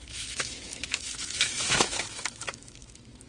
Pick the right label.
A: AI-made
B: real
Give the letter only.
A